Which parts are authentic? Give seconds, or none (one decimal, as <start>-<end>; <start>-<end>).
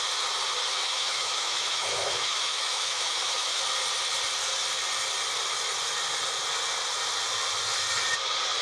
0.0-0.7; 3.6-8.6